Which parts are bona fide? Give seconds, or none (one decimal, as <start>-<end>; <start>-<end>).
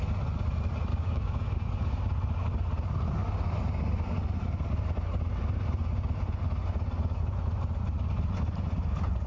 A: 0.0-0.9; 1.5-9.3